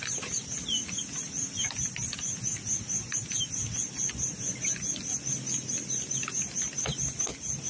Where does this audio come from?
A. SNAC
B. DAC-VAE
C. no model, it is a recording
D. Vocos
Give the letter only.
C